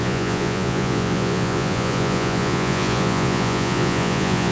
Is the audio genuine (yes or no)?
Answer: no